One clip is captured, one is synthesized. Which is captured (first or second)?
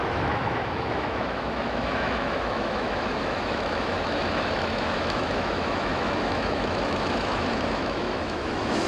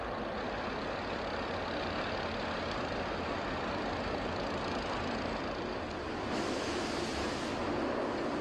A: second